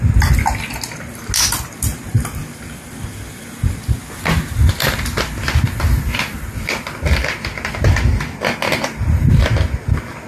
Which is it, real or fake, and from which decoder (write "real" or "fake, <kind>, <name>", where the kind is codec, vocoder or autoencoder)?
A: real